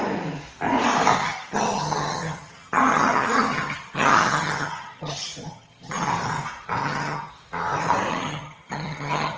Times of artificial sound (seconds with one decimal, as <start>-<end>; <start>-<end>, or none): 1.2-6.1; 6.8-7.3; 8.1-9.4